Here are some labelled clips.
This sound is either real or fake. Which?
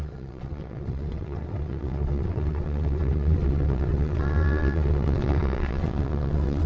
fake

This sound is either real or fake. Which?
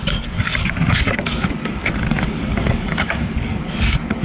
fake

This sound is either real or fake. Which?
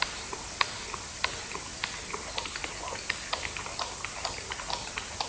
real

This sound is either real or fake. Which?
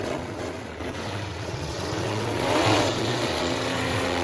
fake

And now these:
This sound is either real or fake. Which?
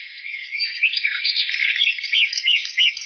fake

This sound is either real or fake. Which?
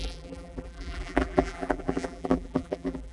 fake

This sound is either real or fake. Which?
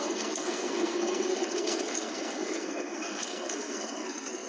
fake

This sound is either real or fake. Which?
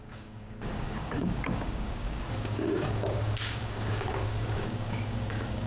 fake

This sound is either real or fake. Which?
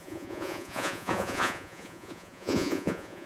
fake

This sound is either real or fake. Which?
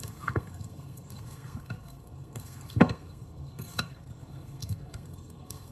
fake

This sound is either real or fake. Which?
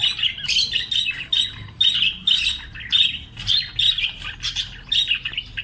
real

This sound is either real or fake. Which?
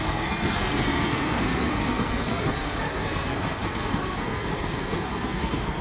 fake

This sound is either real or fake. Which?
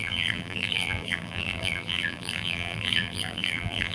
fake